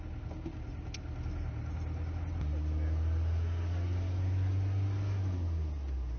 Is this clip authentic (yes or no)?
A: yes